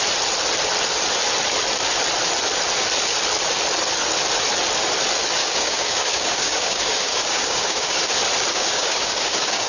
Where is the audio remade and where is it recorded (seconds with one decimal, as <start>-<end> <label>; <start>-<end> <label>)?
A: 0.0-5.4 recorded; 5.4-8.1 remade; 8.1-8.5 recorded; 8.5-9.7 remade